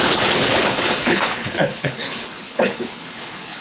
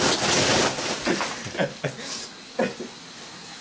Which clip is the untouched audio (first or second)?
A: second